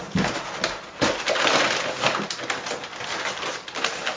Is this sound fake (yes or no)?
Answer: no